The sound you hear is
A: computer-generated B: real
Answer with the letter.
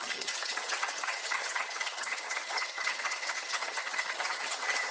A